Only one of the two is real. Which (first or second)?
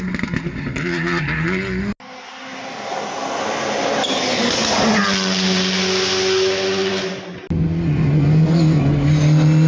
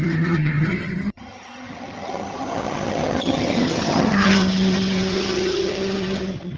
first